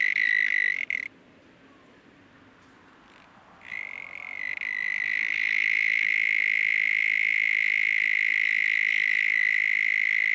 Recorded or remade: recorded